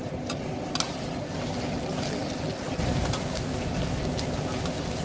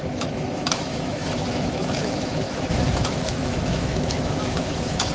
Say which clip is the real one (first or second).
first